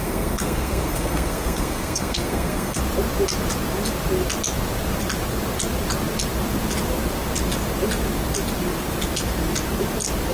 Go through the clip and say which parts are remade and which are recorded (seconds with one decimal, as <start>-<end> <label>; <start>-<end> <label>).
0.0-2.8 remade; 2.8-10.3 recorded